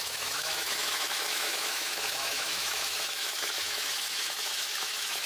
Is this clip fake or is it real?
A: fake